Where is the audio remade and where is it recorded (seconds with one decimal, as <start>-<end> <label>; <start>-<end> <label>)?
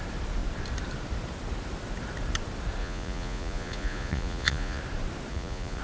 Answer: 0.0-2.8 recorded; 2.8-4.8 remade; 4.8-5.3 recorded; 5.3-5.8 remade